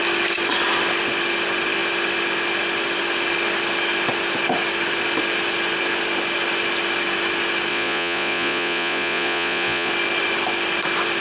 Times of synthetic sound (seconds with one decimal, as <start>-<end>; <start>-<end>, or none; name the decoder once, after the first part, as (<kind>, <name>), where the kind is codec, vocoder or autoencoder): 7.7-9.9 (vocoder, Vocos)